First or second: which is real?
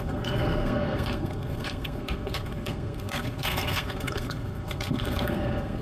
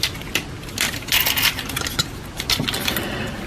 second